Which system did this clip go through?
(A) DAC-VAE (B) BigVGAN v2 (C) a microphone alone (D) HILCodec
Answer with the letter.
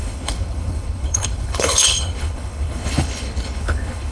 D